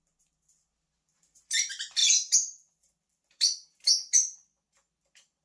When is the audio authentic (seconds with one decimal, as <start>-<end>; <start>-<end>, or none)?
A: 0.0-2.0; 2.9-5.4